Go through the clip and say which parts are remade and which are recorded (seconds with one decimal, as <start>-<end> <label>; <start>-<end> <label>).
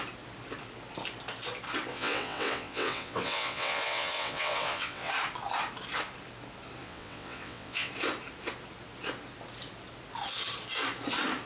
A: 0.0-1.9 recorded; 1.9-5.1 remade; 5.1-6.8 recorded; 6.8-7.9 remade; 7.9-11.5 recorded